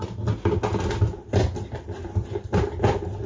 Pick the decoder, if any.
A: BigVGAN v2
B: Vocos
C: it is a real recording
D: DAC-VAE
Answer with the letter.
C